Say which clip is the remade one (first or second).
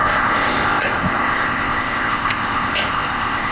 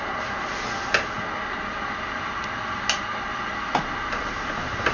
first